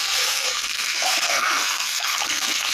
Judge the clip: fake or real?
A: fake